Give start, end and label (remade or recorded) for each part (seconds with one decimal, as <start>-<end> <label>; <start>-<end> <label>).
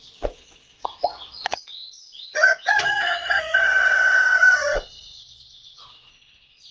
0.0-6.7 remade